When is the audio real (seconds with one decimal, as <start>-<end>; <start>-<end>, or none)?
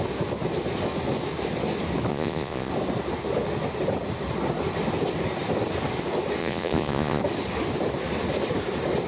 0.0-2.1; 2.7-6.4; 7.2-9.1